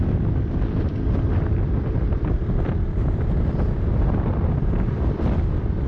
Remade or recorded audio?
remade